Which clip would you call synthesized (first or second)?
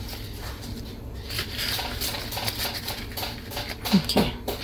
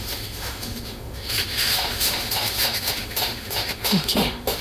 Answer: second